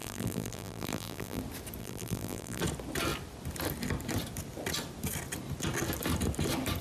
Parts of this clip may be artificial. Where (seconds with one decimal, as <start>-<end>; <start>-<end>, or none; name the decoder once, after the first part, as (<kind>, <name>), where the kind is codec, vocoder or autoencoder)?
0.0-1.4 (vocoder, BigVGAN v2); 1.8-2.6